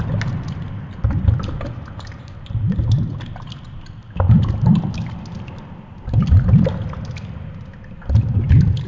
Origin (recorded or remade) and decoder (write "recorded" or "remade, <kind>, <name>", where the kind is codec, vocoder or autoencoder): recorded